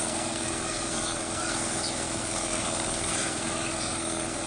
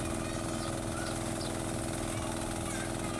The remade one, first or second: first